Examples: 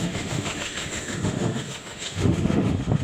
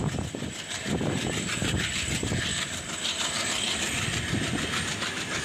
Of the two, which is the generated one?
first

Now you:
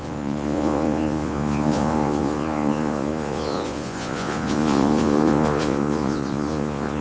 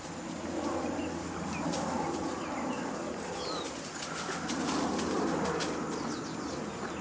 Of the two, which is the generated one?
first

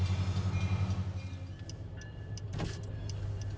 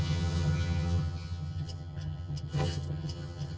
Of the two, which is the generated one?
second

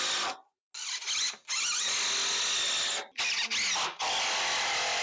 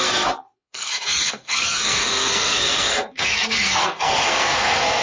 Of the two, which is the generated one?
second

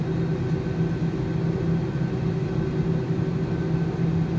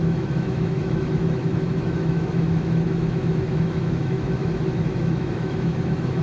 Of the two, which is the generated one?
second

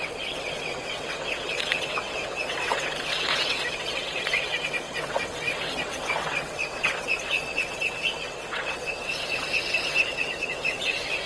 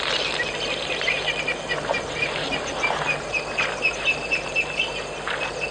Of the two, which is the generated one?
first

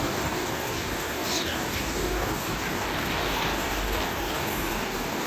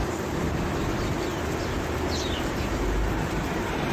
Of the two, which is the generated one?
first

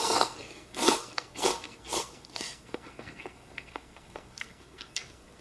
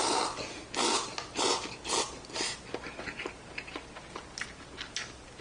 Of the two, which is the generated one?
first